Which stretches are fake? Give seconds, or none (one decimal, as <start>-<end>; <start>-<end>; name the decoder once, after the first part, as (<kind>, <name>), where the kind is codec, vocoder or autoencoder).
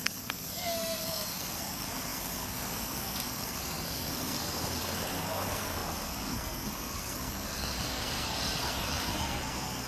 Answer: 0.0-9.9 (codec, SNAC)